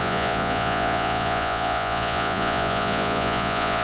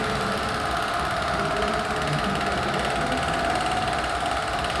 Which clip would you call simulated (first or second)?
first